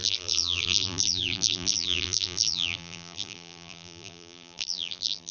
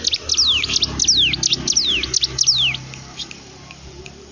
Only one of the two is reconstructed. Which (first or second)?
first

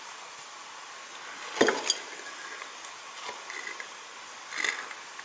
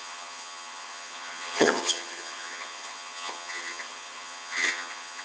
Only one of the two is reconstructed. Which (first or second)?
second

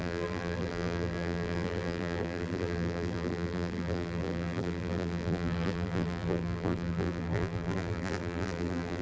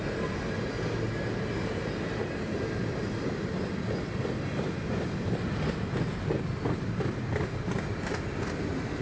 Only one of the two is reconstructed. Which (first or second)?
first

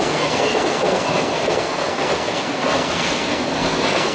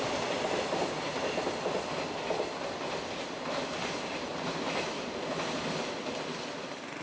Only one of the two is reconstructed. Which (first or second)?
first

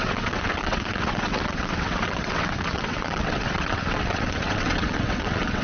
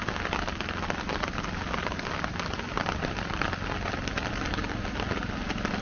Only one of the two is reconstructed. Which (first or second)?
first